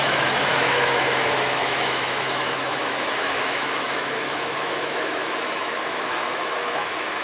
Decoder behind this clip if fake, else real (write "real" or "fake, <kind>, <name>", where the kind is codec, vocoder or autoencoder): fake, autoencoder, DAC-VAE